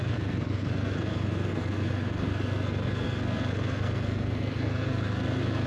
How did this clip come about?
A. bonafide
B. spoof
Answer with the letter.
B